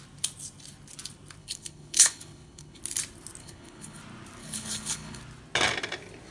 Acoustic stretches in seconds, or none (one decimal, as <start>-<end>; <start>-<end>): 0.0-1.4; 2.8-3.4; 4.0-4.4; 5.2-6.3